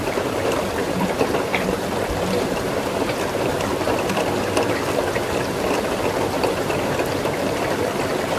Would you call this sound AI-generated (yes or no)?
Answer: yes